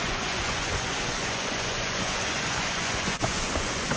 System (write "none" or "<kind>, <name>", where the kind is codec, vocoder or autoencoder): vocoder, Vocos